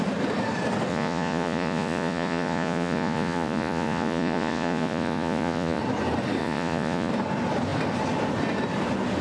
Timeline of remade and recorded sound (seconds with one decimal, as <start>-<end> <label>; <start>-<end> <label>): 0.0-0.9 recorded; 0.9-5.8 remade; 5.8-6.4 recorded; 6.4-7.1 remade; 7.1-9.2 recorded

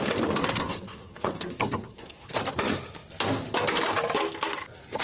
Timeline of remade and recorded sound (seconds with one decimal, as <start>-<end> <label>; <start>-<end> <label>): 0.0-0.4 recorded; 0.4-2.4 remade; 2.4-5.0 recorded

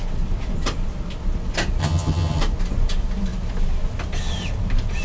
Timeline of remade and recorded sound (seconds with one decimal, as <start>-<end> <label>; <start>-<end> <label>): 0.0-1.8 recorded; 1.8-2.4 remade; 2.4-5.0 recorded

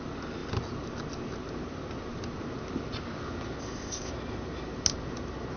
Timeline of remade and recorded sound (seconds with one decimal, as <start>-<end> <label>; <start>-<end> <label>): 0.0-3.6 recorded; 3.6-4.1 remade; 4.1-5.6 recorded

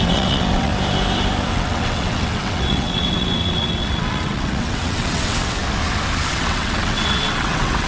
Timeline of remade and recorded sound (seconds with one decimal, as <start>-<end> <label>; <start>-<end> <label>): 0.0-0.7 remade; 0.7-1.5 recorded; 1.5-5.6 remade; 5.6-6.3 recorded; 6.3-7.9 remade

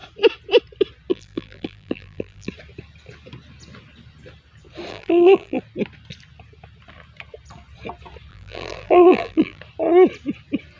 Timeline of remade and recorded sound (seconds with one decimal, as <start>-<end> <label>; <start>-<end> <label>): 0.0-1.1 recorded; 1.1-2.5 remade; 2.5-4.9 recorded; 4.9-5.6 remade; 5.6-8.3 recorded; 8.3-9.6 remade; 9.6-10.8 recorded